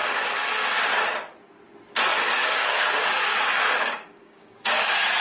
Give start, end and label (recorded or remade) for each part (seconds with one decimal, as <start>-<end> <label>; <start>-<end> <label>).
0.0-2.1 recorded; 2.1-4.8 remade; 4.8-5.2 recorded